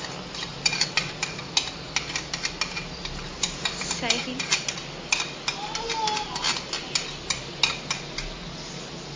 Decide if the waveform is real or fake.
real